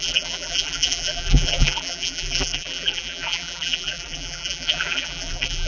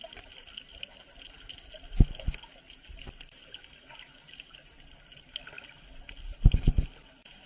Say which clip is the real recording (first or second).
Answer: second